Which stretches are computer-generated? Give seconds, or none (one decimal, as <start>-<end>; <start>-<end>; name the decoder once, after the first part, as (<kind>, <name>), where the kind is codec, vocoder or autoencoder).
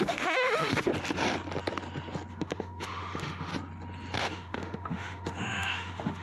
0.0-0.9 (autoencoder, DAC-VAE); 2.3-3.5; 4.2-6.2